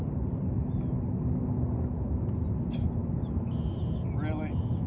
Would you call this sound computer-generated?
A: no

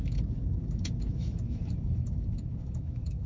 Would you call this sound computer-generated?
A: yes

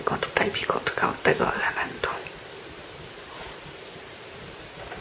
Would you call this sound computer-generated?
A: yes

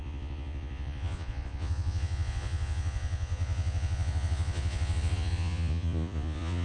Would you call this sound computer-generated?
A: yes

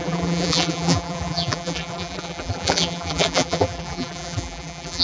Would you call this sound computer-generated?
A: yes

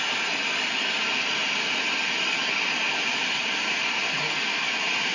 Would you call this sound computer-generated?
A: no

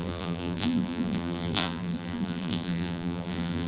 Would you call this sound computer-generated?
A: yes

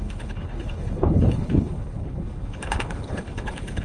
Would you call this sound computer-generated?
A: yes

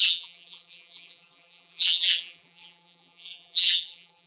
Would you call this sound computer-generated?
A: yes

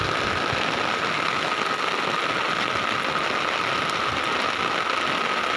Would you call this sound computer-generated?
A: no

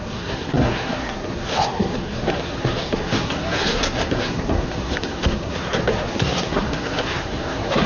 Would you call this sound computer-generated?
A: yes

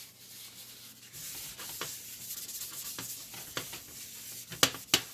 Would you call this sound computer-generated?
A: no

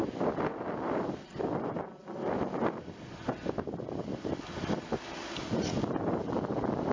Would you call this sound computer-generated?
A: no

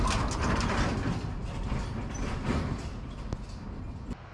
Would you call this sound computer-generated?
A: no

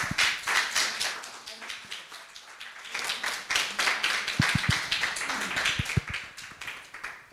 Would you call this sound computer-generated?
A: no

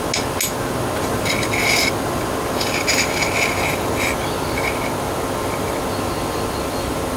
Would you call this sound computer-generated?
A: no